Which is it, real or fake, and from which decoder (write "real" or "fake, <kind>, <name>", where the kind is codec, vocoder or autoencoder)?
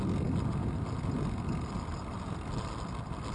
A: real